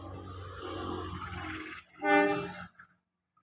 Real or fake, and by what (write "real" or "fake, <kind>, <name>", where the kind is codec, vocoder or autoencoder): real